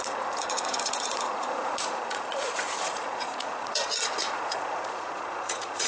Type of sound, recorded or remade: remade